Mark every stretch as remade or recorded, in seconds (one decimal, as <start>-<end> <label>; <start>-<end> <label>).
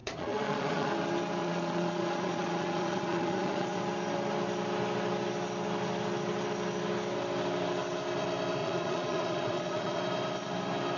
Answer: 0.0-0.9 remade; 0.9-1.4 recorded; 1.4-3.8 remade; 3.8-8.6 recorded; 8.6-10.0 remade; 10.0-11.0 recorded